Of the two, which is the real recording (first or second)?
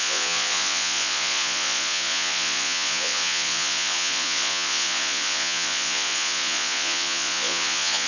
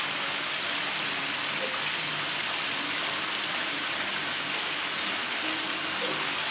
second